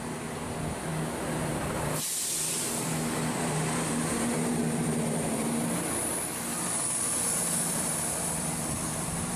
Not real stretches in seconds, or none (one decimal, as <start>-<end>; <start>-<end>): 0.0-0.9; 1.4-9.4

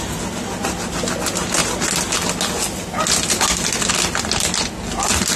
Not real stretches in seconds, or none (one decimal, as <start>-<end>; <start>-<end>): none

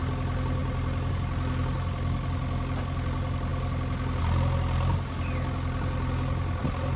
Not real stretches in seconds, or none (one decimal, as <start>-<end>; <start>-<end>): 0.6-1.1